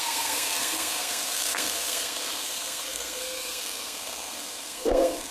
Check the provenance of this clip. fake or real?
fake